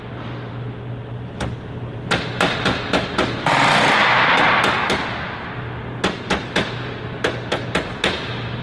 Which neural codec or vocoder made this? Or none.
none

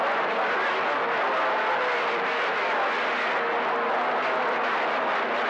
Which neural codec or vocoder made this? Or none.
none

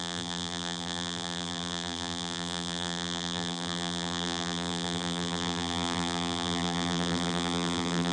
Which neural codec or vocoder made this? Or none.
vocoder, BigVGAN v2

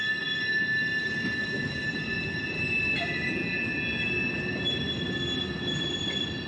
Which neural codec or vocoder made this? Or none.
none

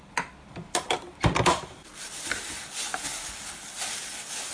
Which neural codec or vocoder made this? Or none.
none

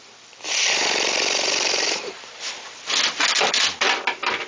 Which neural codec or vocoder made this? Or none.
vocoder, BigVGAN v2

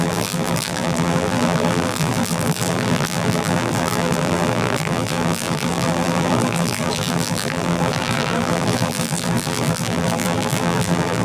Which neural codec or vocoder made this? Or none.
vocoder, BigVGAN v2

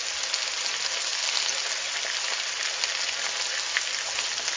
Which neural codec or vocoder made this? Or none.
none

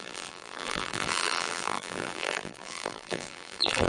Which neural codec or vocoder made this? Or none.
vocoder, BigVGAN v2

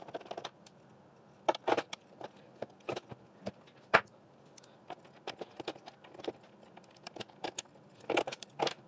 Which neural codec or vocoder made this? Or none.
none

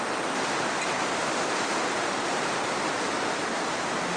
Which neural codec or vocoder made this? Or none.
vocoder, BigVGAN v2